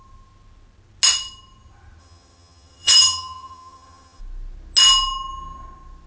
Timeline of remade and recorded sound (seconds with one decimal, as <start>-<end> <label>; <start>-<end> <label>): 0.0-2.0 recorded; 2.0-4.2 remade; 4.2-6.1 recorded

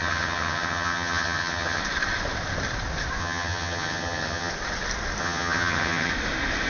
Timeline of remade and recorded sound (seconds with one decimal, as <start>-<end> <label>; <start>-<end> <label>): 0.0-1.8 remade; 1.8-3.2 recorded; 3.2-4.5 remade; 4.5-5.2 recorded; 5.2-6.1 remade; 6.1-6.7 recorded